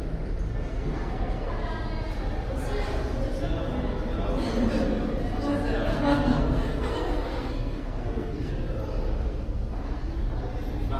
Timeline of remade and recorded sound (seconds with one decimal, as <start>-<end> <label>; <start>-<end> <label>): 0.0-0.7 recorded; 0.7-1.5 remade; 1.5-5.9 recorded; 5.9-8.5 remade; 8.5-9.3 recorded; 9.3-10.1 remade; 10.1-11.0 recorded